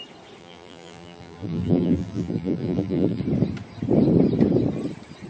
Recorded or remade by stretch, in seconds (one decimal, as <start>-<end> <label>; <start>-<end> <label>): 0.0-0.4 recorded; 0.4-3.2 remade; 3.2-5.3 recorded